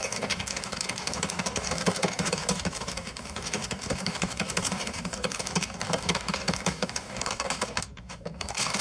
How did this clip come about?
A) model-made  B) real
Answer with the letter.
A